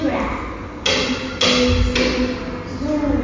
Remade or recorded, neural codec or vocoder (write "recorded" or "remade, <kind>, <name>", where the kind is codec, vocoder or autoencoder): recorded